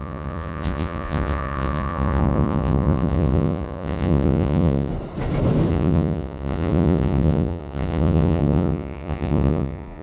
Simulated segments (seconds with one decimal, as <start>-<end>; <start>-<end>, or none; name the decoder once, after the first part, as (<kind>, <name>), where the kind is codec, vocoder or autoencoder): 0.0-4.9 (vocoder, Vocos); 5.7-10.0